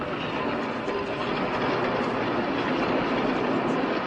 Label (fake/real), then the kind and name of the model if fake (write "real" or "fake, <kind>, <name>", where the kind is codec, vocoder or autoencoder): real